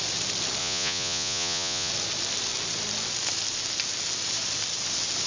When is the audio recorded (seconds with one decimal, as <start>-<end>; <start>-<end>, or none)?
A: 0.0-0.6; 1.9-5.3